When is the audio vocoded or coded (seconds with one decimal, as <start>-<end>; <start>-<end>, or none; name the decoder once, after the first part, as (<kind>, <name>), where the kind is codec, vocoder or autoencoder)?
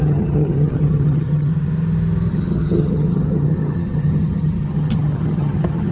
0.0-1.5 (vocoder, HiFi-GAN); 2.3-5.9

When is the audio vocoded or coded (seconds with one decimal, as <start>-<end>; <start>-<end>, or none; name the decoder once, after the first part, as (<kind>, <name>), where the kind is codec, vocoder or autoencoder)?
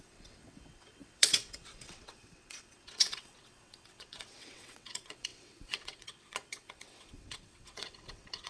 0.0-8.5 (vocoder, WaveNeXt)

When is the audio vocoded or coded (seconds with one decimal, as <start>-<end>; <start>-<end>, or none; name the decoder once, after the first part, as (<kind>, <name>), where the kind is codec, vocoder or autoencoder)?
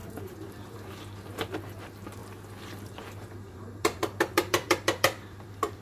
0.0-0.9 (vocoder, BigVGAN v2); 2.2-5.8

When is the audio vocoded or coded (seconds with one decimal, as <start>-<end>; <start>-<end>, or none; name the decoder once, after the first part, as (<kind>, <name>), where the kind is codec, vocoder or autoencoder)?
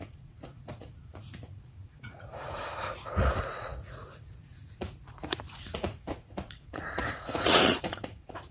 0.0-8.5 (vocoder, Vocos)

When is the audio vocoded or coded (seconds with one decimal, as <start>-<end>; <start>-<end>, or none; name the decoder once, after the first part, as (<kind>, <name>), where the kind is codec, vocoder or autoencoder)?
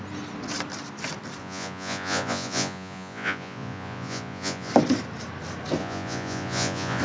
1.4-4.7 (vocoder, Vocos); 5.8-7.0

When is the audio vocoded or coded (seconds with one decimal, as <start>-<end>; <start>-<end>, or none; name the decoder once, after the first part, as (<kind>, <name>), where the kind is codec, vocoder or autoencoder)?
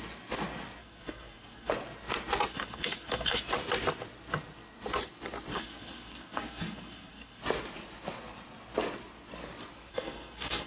0.8-1.7 (codec, SNAC); 2.5-3.4; 5.5-7.4; 9.9-10.7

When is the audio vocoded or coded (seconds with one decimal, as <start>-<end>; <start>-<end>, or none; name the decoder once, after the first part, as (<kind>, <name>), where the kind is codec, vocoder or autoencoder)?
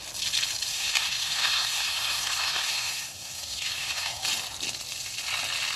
0.7-4.2 (codec, SNAC)